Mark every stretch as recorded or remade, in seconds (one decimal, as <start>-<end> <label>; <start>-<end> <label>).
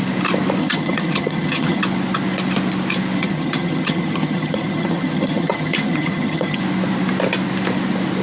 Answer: 0.0-0.6 recorded; 0.6-1.8 remade; 1.8-3.2 recorded; 3.2-6.6 remade; 6.6-8.2 recorded